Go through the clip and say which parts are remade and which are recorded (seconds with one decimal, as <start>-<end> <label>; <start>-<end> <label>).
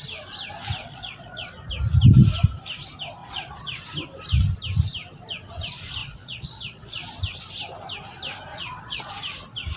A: 0.0-0.8 recorded; 0.8-1.5 remade; 1.5-3.2 recorded; 3.2-3.8 remade; 3.8-6.0 recorded; 6.0-7.1 remade; 7.1-8.5 recorded; 8.5-9.1 remade; 9.1-9.8 recorded